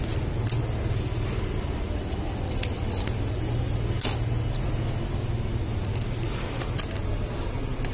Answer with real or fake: real